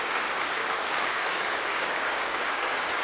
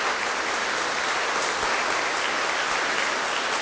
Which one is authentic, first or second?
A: second